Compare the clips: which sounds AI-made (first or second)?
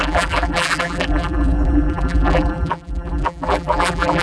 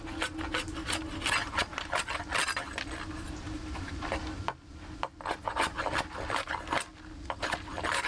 first